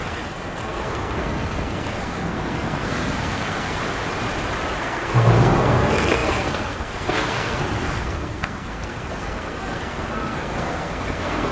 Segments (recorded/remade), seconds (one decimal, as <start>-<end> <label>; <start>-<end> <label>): 0.0-3.8 remade; 3.8-4.8 recorded; 4.8-11.5 remade